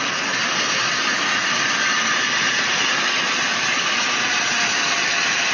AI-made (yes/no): no